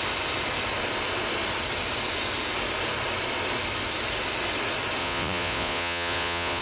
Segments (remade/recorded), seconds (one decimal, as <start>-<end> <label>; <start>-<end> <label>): 0.0-5.0 recorded; 5.0-6.6 remade